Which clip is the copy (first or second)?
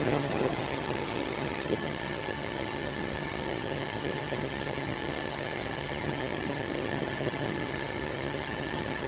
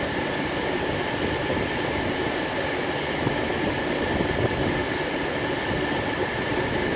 first